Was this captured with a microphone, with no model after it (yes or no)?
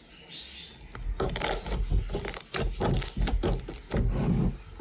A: yes